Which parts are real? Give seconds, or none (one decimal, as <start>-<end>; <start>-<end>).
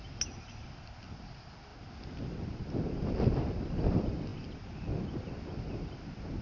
0.0-6.4